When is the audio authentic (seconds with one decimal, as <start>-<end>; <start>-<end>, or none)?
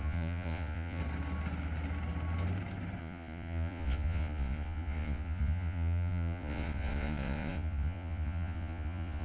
1.0-3.0